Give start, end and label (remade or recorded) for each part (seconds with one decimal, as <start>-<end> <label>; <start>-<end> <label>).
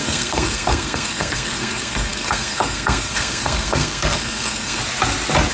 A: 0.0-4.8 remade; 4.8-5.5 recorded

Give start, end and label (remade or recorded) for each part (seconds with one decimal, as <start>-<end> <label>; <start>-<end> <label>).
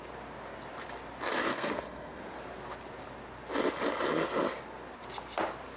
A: 0.0-1.5 recorded; 1.5-2.2 remade; 2.2-5.8 recorded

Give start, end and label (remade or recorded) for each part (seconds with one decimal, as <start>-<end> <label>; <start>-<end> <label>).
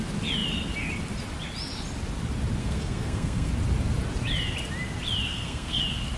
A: 0.0-2.6 recorded; 2.6-3.5 remade; 3.5-5.3 recorded; 5.3-5.8 remade; 5.8-6.2 recorded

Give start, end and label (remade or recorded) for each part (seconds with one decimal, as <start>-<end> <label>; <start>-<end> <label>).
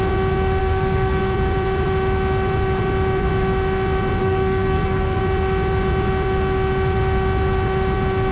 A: 0.0-0.6 recorded; 0.6-1.2 remade; 1.2-4.2 recorded; 4.2-5.2 remade; 5.2-8.3 recorded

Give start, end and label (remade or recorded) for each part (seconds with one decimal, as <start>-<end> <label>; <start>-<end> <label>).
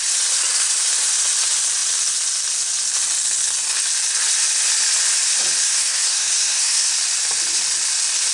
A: 0.0-5.6 recorded; 5.6-6.9 remade; 6.9-8.3 recorded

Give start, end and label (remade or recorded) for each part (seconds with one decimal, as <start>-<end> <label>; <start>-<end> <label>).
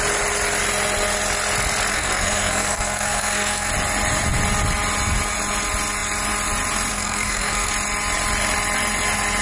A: 0.0-1.9 recorded; 1.9-3.7 remade; 3.7-6.9 recorded; 6.9-7.7 remade; 7.7-9.4 recorded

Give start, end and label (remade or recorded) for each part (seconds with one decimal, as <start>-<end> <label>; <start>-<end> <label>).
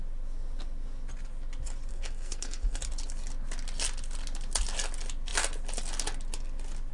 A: 0.0-1.9 recorded; 1.9-2.8 remade; 2.8-6.9 recorded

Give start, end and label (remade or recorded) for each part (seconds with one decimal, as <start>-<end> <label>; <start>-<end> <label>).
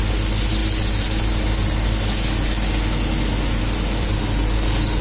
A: 0.0-5.0 recorded